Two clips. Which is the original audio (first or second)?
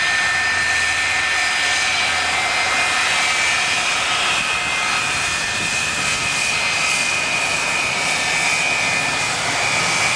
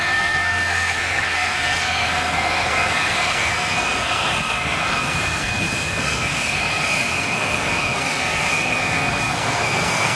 first